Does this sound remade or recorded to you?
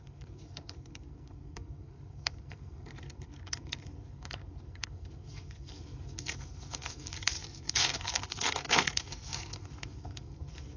remade